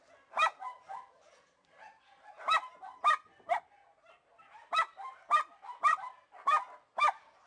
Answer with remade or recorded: recorded